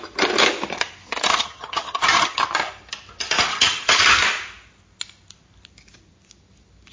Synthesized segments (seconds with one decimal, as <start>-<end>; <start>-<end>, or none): 1.3-2.4; 3.5-4.0